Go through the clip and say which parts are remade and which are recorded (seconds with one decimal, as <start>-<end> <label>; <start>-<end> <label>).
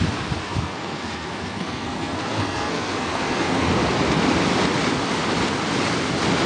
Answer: 0.0-0.4 recorded; 0.4-3.7 remade; 3.7-6.5 recorded